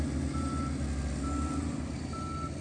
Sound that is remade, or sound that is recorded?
recorded